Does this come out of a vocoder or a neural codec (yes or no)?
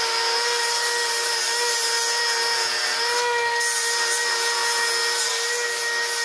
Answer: no